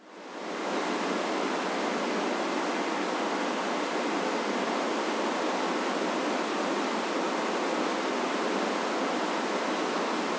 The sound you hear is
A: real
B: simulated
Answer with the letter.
A